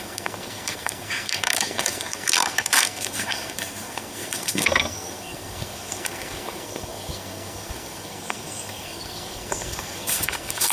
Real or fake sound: fake